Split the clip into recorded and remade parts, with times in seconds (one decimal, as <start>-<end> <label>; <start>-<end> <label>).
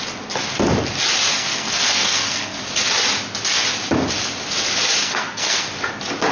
0.0-1.3 recorded; 1.3-2.6 remade; 2.6-5.0 recorded; 5.0-5.7 remade; 5.7-6.3 recorded